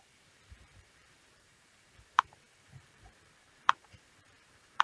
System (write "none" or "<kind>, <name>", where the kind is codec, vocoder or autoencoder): vocoder, BigVGAN v2